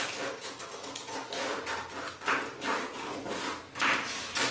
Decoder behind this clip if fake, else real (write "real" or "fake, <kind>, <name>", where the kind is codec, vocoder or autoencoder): real